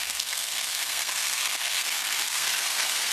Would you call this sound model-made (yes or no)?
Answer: yes